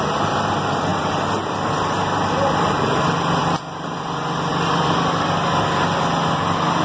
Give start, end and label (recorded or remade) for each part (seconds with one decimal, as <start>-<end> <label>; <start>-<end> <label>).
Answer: 0.0-6.8 recorded